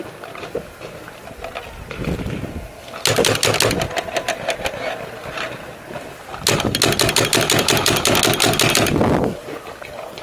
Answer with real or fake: real